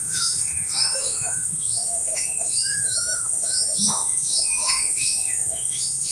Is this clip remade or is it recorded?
remade